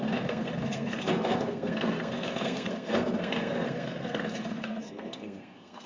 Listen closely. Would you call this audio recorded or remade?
remade